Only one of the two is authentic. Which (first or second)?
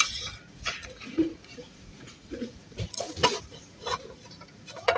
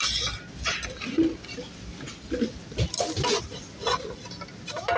second